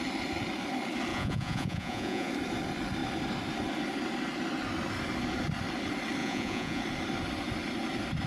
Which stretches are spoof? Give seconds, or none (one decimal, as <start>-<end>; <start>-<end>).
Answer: 1.1-2.3; 6.2-6.8